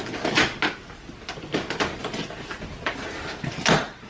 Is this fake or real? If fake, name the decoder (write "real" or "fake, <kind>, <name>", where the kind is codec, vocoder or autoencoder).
real